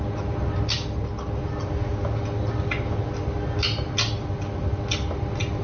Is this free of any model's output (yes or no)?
yes